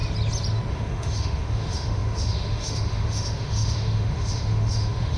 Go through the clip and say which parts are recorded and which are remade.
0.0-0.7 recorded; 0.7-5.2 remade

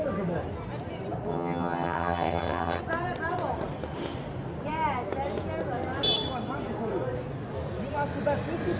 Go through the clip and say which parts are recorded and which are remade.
0.0-1.3 recorded; 1.3-2.8 remade; 2.8-8.8 recorded

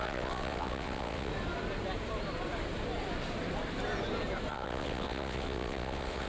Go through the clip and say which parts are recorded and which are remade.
0.0-1.3 remade; 1.3-4.5 recorded; 4.5-6.3 remade

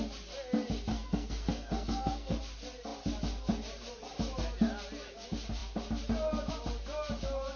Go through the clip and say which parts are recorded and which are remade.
0.0-0.9 recorded; 0.9-2.4 remade; 2.4-7.6 recorded

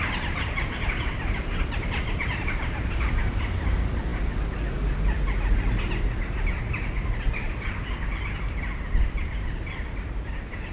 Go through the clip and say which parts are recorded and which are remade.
0.0-4.1 remade; 4.1-6.6 recorded; 6.6-10.7 remade

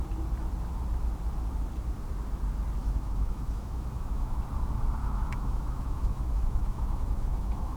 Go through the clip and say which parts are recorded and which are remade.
0.0-2.8 recorded; 2.8-4.4 remade; 4.4-5.0 recorded; 5.0-7.8 remade